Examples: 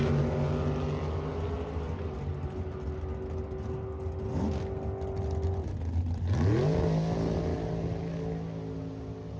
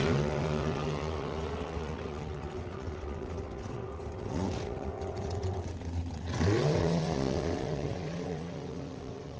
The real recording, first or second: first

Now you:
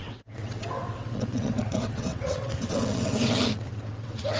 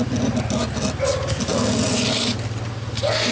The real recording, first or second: second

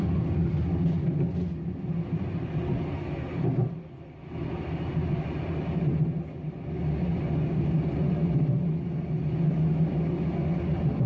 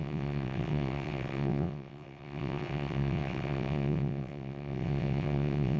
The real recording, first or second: first